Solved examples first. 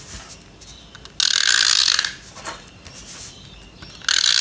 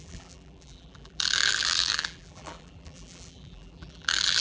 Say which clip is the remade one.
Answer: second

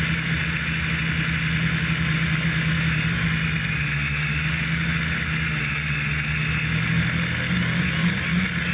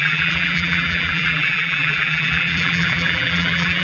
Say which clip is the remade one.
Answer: second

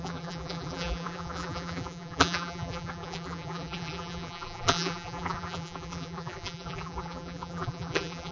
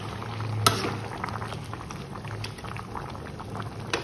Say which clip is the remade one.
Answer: first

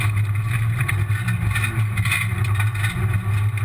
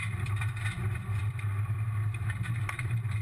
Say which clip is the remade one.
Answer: second